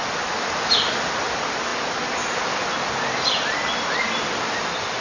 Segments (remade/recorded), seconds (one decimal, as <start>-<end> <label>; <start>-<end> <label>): 0.0-5.0 recorded